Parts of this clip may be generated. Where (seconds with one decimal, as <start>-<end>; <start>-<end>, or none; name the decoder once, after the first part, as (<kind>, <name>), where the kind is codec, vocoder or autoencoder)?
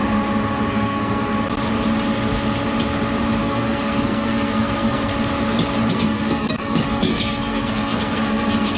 0.7-1.3 (codec, SNAC); 3.4-5.1; 5.9-8.8